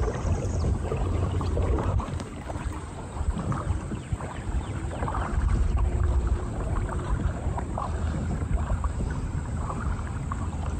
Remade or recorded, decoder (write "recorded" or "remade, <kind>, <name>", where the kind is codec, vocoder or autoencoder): remade, vocoder, BigVGAN v2